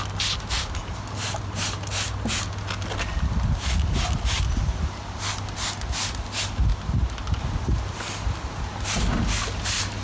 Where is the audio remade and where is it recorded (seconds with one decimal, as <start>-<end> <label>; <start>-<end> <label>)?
0.0-10.0 recorded

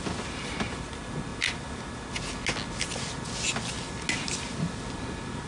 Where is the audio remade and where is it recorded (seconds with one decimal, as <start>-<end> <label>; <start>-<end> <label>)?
0.0-5.5 recorded

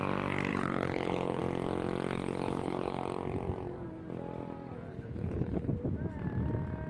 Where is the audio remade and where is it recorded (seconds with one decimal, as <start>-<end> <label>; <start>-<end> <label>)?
0.0-0.5 recorded; 0.5-1.4 remade; 1.4-2.1 recorded; 2.1-3.0 remade; 3.0-4.9 recorded; 4.9-5.7 remade; 5.7-6.9 recorded

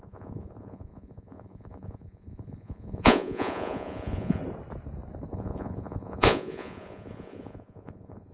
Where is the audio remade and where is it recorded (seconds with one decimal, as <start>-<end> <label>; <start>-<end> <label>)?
0.0-4.4 remade; 4.4-5.3 recorded; 5.3-8.3 remade

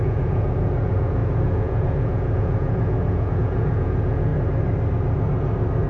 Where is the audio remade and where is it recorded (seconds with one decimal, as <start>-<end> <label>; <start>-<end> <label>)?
0.0-4.3 remade; 4.3-5.9 recorded